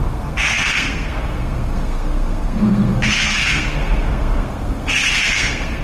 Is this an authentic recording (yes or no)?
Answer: no